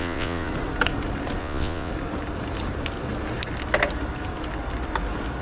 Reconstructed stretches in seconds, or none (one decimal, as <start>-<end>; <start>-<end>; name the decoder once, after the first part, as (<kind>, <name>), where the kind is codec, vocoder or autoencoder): 0.0-0.5 (vocoder, Vocos); 1.4-1.9